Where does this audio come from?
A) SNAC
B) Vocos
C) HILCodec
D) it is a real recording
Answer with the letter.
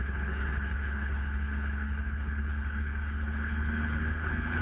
C